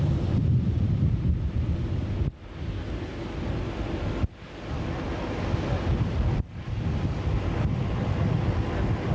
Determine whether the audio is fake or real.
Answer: real